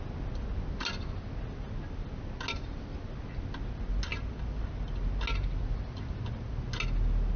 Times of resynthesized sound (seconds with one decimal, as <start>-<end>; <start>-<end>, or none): none